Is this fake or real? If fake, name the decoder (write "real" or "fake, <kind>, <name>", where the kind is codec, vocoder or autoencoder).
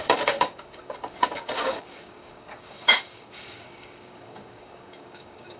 fake, codec, DAC